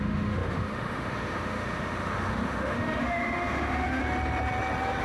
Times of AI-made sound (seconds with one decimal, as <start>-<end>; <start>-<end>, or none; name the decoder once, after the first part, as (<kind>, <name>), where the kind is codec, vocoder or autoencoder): 0.0-4.0 (autoencoder, DAC-VAE)